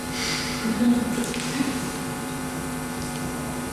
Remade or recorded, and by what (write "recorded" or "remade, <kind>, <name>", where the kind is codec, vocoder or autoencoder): remade, vocoder, BigVGAN v2